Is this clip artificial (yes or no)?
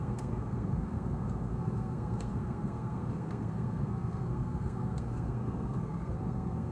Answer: yes